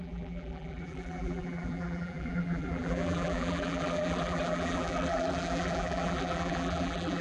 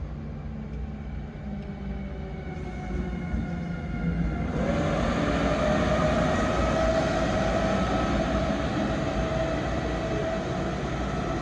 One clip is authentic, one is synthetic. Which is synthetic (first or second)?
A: first